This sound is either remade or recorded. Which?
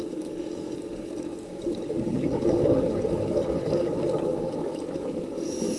remade